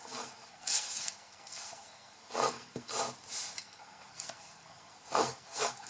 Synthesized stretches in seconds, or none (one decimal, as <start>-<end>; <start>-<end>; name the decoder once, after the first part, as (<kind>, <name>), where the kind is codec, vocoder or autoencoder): 0.0-2.9 (codec, SNAC); 3.6-5.9